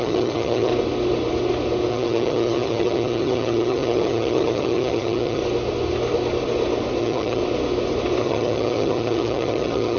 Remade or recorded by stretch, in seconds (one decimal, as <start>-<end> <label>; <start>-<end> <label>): 0.0-0.7 remade; 0.7-1.9 recorded; 1.9-5.4 remade; 5.4-7.0 recorded; 7.0-7.4 remade; 7.4-8.2 recorded; 8.2-10.0 remade